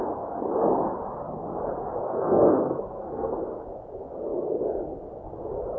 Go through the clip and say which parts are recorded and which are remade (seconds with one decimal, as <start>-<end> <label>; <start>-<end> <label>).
0.0-2.0 recorded; 2.0-3.4 remade; 3.4-5.8 recorded